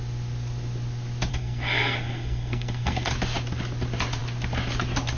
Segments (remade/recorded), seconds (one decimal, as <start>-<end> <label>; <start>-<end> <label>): 0.0-1.3 recorded; 1.3-3.1 remade; 3.1-5.2 recorded